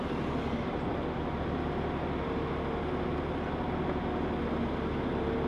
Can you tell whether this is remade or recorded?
recorded